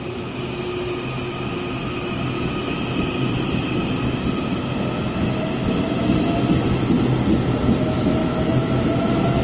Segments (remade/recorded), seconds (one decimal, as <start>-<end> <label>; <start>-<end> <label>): 0.0-8.2 recorded; 8.2-9.4 remade